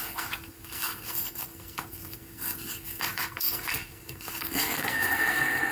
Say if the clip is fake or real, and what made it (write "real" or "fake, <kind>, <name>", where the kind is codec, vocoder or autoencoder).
fake, codec, SNAC